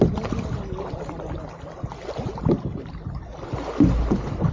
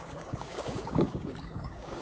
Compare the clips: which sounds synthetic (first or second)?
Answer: second